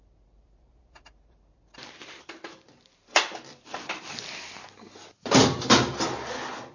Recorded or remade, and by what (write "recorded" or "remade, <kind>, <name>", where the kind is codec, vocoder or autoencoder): recorded